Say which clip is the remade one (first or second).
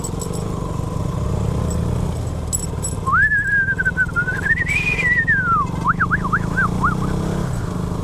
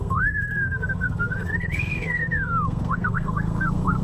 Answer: second